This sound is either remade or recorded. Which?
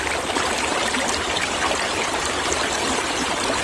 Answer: remade